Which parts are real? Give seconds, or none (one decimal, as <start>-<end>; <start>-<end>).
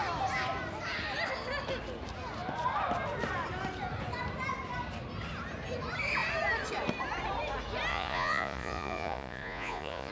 0.0-7.9